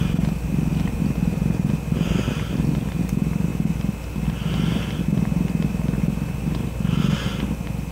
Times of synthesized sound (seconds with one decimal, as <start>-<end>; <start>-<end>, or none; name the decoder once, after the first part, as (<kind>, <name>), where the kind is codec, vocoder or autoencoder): 3.5-7.0 (vocoder, BigVGAN v2)